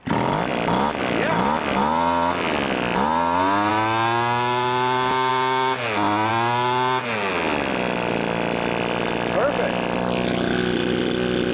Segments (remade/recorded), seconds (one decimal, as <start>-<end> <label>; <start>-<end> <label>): 0.0-11.5 recorded

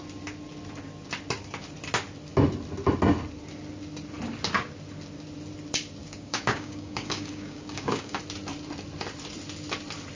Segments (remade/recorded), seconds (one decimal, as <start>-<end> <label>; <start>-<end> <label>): 0.0-6.0 recorded; 6.0-8.2 remade; 8.2-10.1 recorded

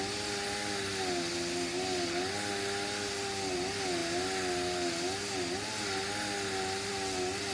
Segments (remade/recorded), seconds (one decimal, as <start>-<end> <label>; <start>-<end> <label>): 0.0-7.5 recorded

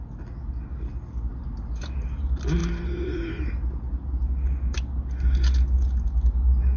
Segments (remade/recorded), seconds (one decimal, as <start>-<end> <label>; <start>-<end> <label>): 0.0-6.8 recorded

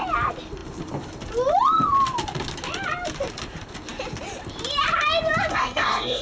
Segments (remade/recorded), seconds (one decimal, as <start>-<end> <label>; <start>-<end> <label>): 0.0-5.5 recorded; 5.5-6.2 remade

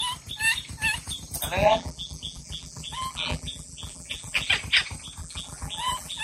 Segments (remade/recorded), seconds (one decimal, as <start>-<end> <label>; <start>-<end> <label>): 0.0-1.6 recorded; 1.6-4.5 remade; 4.5-5.2 recorded; 5.2-6.2 remade

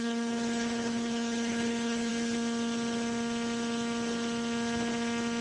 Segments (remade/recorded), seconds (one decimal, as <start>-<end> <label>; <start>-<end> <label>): 0.0-2.1 remade; 2.1-5.4 recorded